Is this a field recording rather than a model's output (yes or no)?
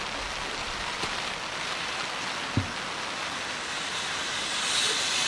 yes